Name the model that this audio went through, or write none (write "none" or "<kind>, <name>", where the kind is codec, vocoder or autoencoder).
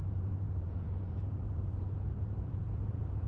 vocoder, BigVGAN v2